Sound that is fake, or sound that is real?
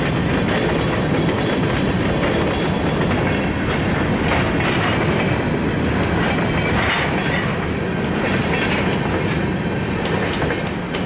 real